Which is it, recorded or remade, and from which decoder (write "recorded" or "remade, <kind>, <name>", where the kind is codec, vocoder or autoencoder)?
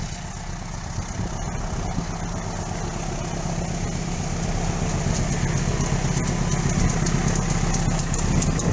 recorded